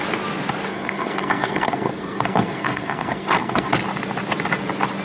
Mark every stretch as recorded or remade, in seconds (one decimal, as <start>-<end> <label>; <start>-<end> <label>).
0.0-0.7 recorded; 0.7-3.7 remade; 3.7-5.0 recorded